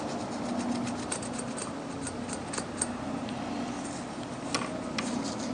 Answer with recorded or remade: recorded